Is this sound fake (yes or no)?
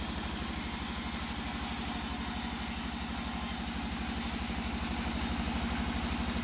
no